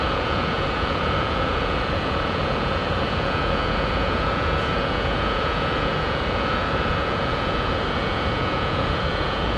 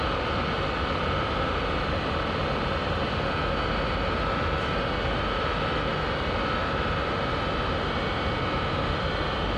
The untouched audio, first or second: second